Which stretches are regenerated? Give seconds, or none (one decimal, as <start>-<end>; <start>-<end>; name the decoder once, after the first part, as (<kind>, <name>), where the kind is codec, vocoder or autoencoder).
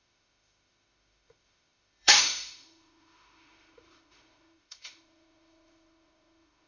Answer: 0.0-6.7 (autoencoder, DAC-VAE)